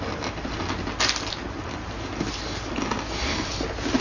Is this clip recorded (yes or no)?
yes